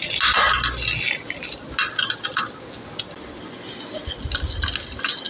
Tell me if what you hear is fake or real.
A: real